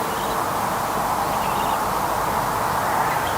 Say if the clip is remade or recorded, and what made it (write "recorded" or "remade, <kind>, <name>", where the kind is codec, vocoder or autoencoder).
recorded